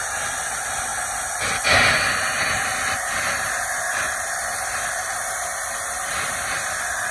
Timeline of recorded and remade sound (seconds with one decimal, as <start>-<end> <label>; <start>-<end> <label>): 0.0-0.9 remade; 0.9-4.0 recorded; 4.0-7.1 remade